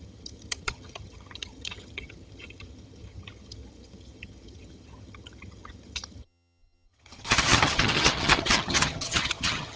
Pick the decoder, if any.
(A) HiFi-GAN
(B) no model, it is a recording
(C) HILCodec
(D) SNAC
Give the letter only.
A